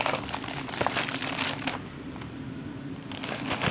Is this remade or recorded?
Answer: recorded